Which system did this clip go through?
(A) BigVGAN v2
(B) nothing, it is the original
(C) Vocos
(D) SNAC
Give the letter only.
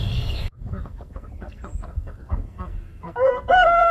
D